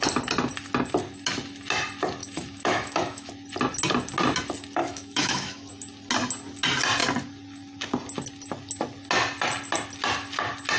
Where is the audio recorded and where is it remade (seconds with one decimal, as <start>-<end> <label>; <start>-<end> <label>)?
0.0-2.2 recorded; 2.2-3.3 remade; 3.3-4.8 recorded; 4.8-5.7 remade; 5.7-10.8 recorded